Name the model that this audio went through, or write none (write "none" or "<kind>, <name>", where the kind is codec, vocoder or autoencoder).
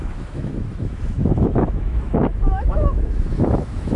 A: autoencoder, DAC-VAE